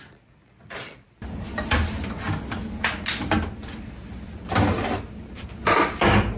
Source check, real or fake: real